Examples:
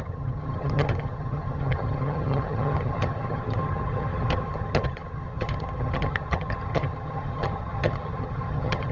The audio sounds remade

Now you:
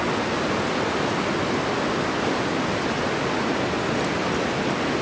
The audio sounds recorded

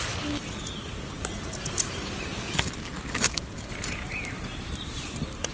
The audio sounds recorded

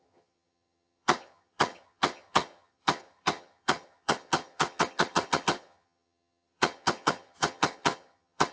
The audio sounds remade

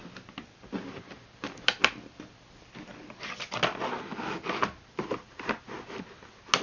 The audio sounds recorded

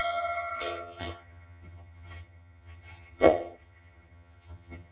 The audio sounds remade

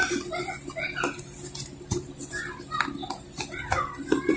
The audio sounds recorded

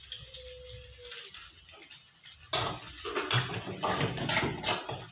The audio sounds recorded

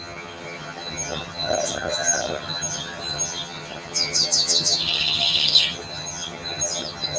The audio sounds remade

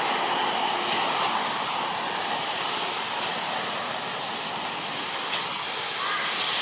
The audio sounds recorded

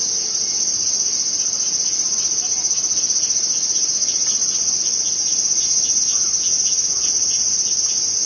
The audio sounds recorded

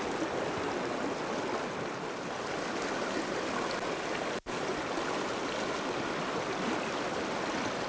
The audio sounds recorded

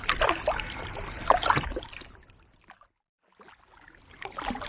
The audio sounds recorded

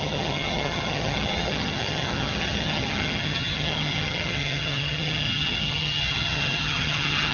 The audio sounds remade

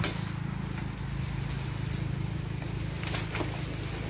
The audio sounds recorded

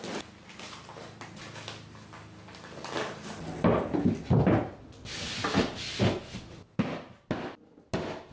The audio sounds recorded